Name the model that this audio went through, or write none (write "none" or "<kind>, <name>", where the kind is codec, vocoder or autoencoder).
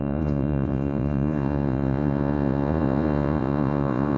vocoder, Vocos